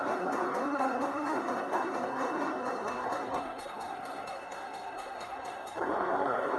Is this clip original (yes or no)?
no